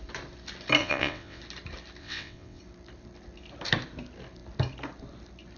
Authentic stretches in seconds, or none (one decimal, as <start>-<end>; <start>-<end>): 0.0-0.8; 1.4-2.0; 2.6-5.6